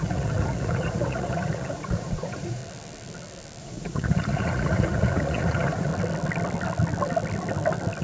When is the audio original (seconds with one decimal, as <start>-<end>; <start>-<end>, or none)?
2.6-3.6; 5.9-8.0